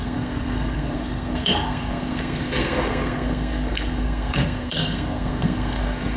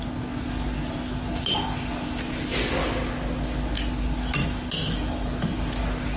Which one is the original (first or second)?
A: second